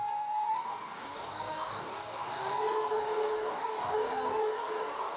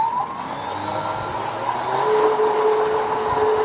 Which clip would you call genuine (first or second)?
second